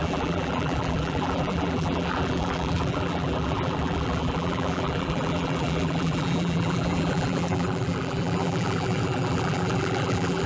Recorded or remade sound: remade